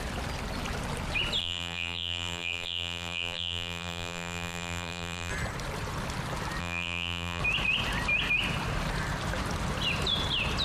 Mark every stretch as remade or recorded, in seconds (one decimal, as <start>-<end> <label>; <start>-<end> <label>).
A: 0.0-1.4 recorded; 1.4-5.3 remade; 5.3-6.6 recorded; 6.6-7.4 remade; 7.4-10.6 recorded